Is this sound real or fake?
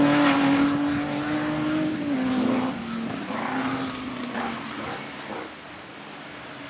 real